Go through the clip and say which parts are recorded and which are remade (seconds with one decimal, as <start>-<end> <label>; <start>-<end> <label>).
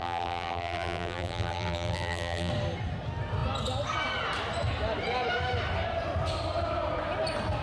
0.0-2.5 remade; 2.5-7.6 recorded